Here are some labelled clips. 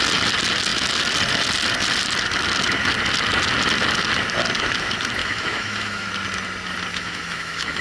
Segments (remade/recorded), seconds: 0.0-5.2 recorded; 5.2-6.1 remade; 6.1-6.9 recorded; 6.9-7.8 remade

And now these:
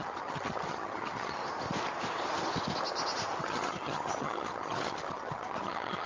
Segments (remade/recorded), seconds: 0.0-1.4 remade; 1.4-3.4 recorded; 3.4-6.1 remade

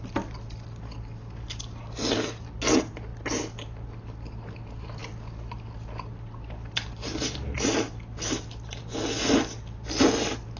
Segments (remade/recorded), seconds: 0.0-10.6 recorded

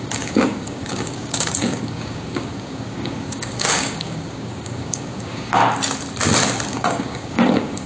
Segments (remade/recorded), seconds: 0.0-5.6 remade; 5.6-6.7 recorded; 6.7-7.9 remade

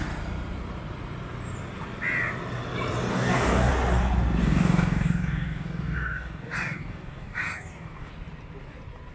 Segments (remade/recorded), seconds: 0.0-3.1 recorded; 3.1-3.7 remade; 3.7-4.4 recorded; 4.4-8.1 remade; 8.1-9.1 recorded